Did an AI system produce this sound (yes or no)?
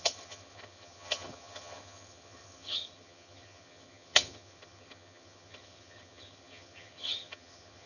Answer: yes